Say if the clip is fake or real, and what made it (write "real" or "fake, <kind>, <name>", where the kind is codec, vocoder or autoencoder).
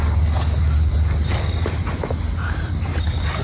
real